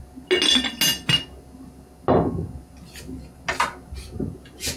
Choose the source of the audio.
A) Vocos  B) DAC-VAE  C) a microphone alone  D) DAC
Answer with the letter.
C